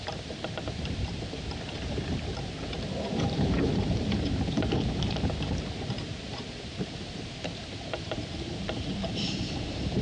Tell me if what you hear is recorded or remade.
remade